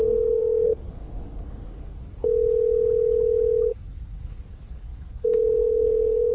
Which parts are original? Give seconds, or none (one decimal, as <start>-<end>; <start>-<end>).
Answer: 2.1-3.7